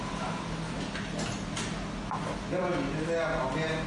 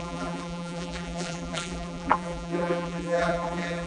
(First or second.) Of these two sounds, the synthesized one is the second